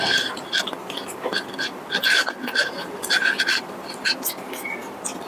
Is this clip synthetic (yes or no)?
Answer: no